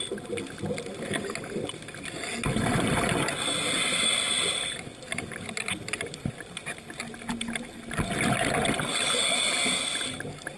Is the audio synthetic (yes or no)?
no